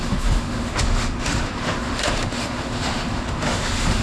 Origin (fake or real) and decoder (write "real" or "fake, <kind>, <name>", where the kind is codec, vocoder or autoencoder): fake, autoencoder, DAC-VAE